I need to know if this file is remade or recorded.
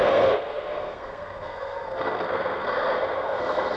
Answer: remade